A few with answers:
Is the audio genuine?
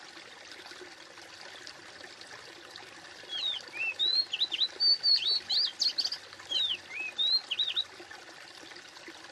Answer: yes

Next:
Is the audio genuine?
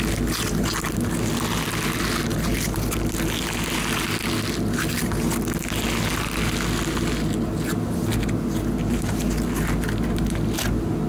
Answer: yes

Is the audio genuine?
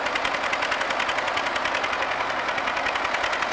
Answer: yes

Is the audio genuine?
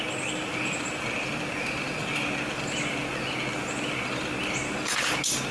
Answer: yes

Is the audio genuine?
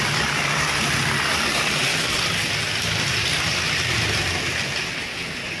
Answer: yes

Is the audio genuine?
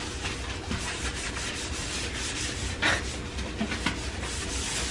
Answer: yes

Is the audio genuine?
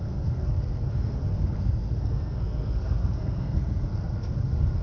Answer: no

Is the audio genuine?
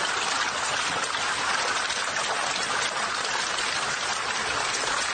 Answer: yes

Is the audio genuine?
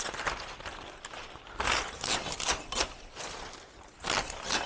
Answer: yes